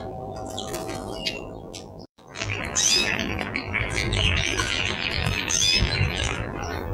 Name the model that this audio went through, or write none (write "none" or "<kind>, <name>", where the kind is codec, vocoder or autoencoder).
vocoder, BigVGAN v2